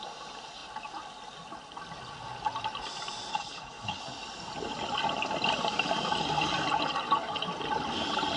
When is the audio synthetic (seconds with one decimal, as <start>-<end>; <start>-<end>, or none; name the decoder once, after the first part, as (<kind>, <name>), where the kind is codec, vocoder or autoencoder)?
3.3-4.0 (codec, HILCodec)